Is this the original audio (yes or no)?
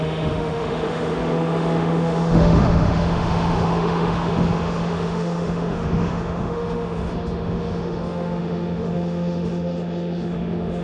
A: no